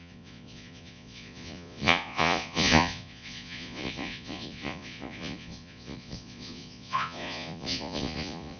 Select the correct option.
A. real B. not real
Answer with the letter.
B